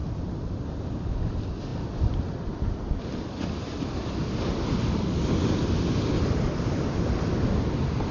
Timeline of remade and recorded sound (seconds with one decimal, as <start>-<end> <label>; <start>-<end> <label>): 0.0-1.2 remade; 1.2-8.1 recorded